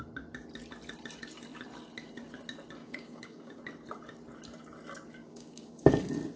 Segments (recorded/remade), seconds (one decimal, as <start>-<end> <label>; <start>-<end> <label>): 0.0-2.8 recorded; 2.8-3.6 remade; 3.6-5.2 recorded; 5.2-5.9 remade; 5.9-6.4 recorded

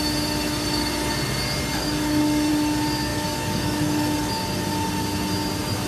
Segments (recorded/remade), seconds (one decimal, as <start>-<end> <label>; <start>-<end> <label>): 0.0-1.7 recorded; 1.7-2.5 remade; 2.5-3.1 recorded; 3.1-4.3 remade; 4.3-5.9 recorded

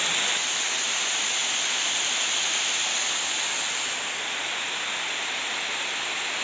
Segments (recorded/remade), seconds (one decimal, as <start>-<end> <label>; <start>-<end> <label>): 0.0-6.4 recorded

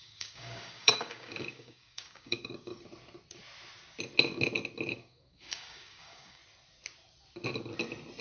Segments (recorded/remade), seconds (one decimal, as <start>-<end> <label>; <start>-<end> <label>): 0.0-2.7 remade; 2.7-4.9 recorded; 4.9-6.4 remade; 6.4-8.2 recorded

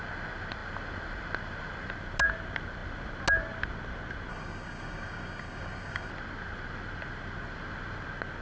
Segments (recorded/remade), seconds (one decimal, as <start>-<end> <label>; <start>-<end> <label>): 0.0-4.3 recorded; 4.3-6.1 remade; 6.1-8.4 recorded

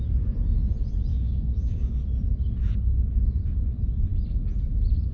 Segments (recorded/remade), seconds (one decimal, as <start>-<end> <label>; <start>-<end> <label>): 0.0-1.1 recorded; 1.1-1.9 remade; 1.9-5.1 recorded

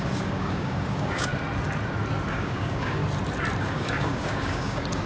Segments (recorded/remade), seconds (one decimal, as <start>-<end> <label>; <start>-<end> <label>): 0.0-1.3 remade; 1.3-2.3 recorded; 2.3-3.0 remade; 3.0-3.6 recorded; 3.6-5.1 remade

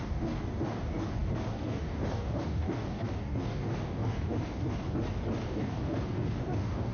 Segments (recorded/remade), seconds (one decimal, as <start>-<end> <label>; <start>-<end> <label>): 0.0-4.8 remade; 4.8-5.4 recorded; 5.4-6.9 remade